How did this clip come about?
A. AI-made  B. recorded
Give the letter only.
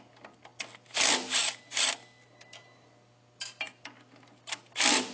B